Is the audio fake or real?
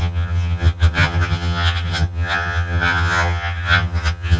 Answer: fake